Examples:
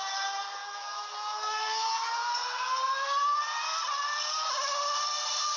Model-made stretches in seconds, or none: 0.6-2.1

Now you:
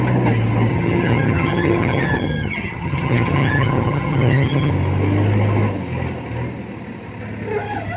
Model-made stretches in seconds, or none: 0.7-4.7

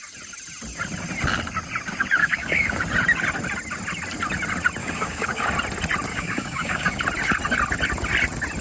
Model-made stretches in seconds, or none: 2.2-2.8; 4.8-5.4; 6.1-7.0

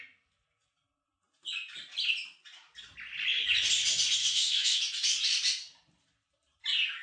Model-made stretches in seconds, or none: 4.2-4.8

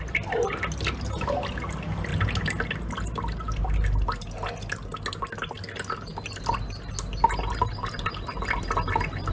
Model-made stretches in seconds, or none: none

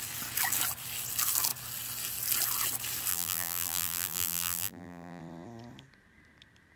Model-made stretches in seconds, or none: 3.1-5.2

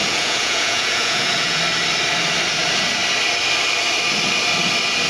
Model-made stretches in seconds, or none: 0.0-1.6

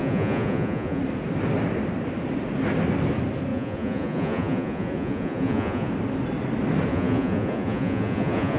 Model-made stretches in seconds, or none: 0.0-1.0; 3.5-5.9; 6.9-8.6